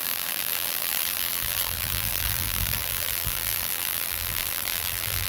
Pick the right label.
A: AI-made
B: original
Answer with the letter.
A